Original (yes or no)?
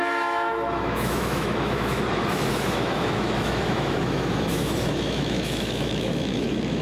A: no